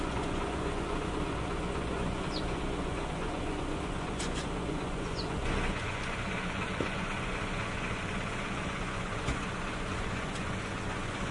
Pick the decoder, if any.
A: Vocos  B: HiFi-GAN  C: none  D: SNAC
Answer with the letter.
A